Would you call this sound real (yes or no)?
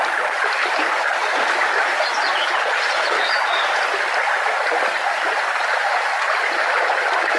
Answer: yes